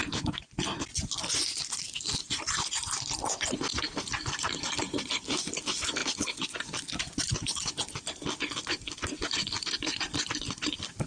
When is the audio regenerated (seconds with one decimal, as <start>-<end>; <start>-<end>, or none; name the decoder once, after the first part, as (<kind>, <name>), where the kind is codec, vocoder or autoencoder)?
none